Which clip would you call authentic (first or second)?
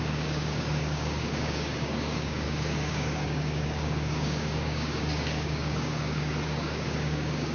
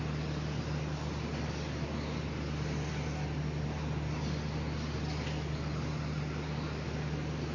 second